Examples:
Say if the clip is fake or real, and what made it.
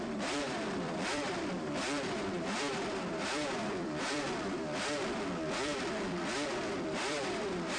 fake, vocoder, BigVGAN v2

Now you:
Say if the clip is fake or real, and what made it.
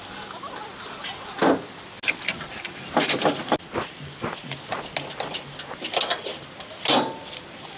real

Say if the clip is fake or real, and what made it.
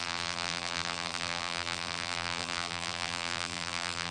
fake, vocoder, BigVGAN v2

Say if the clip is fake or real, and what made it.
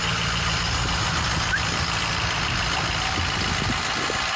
real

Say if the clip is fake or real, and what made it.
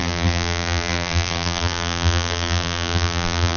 fake, vocoder, BigVGAN v2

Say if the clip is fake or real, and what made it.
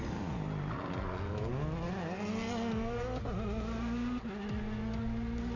real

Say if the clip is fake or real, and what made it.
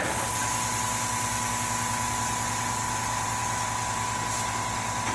real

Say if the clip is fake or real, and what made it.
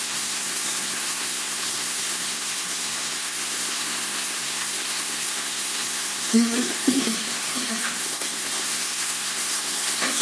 fake, codec, SNAC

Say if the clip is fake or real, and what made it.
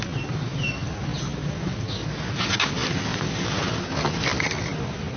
real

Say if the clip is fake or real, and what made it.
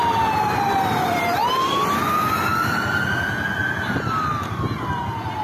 real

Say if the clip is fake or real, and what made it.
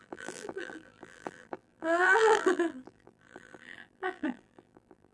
fake, vocoder, BigVGAN v2